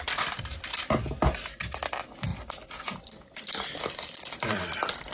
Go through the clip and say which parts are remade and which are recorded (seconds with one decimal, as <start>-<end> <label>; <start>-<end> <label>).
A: 0.0-0.7 remade; 0.7-1.4 recorded; 1.4-5.1 remade